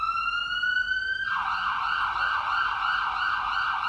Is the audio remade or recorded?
recorded